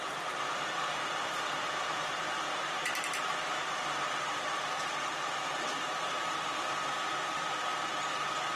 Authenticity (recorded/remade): remade